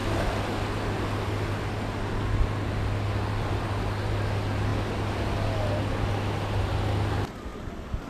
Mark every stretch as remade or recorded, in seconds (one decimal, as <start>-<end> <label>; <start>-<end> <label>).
0.0-8.1 recorded

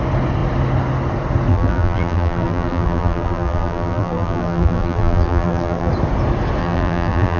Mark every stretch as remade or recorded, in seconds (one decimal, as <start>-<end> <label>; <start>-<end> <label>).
0.0-1.5 recorded; 1.5-5.9 remade; 5.9-6.6 recorded; 6.6-7.4 remade

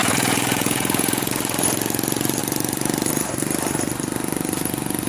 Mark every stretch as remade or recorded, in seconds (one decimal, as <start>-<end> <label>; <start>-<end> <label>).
0.0-1.3 remade; 1.3-5.1 recorded

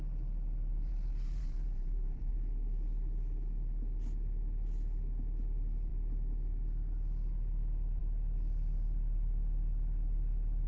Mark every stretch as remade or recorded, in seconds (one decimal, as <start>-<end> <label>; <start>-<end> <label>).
0.0-0.7 recorded; 0.7-2.3 remade; 2.3-10.7 recorded

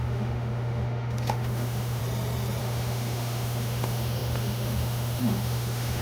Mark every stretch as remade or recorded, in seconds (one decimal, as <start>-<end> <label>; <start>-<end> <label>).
0.0-2.0 remade; 2.0-2.6 recorded; 2.6-6.0 remade

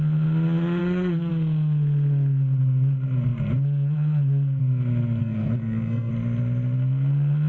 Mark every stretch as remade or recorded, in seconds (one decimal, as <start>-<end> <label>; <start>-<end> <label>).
0.0-0.8 recorded; 0.8-1.3 remade; 1.3-5.2 recorded; 5.2-6.1 remade; 6.1-7.5 recorded